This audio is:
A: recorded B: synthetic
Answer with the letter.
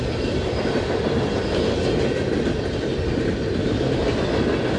A